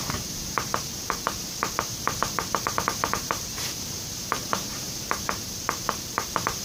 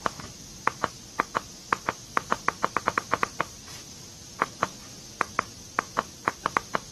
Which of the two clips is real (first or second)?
second